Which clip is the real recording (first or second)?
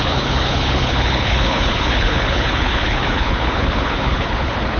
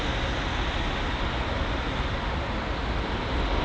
second